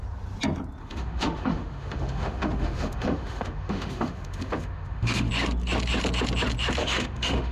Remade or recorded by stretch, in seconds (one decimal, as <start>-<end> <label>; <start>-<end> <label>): 0.0-0.8 recorded; 0.8-5.3 remade; 5.3-6.8 recorded; 6.8-7.5 remade